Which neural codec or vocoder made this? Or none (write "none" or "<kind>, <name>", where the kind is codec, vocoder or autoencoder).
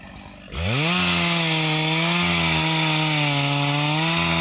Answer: none